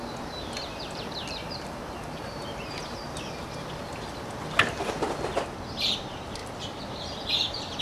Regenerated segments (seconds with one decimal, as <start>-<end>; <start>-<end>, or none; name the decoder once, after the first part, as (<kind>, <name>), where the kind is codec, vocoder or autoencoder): 0.7-3.0 (vocoder, BigVGAN v2); 6.4-7.8